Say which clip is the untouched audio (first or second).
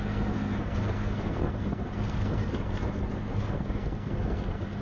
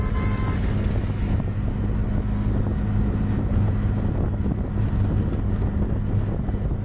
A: second